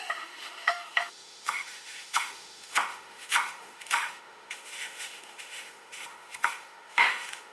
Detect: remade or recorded remade